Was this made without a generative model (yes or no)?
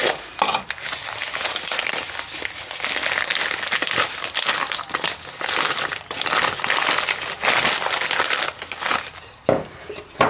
yes